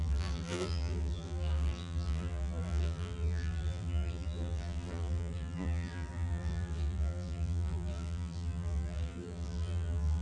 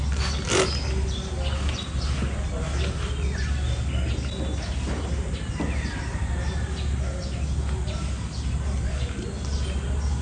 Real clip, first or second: second